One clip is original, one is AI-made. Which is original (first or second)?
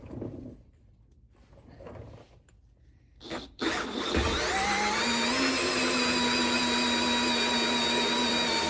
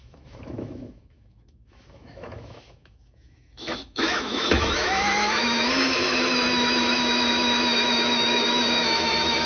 first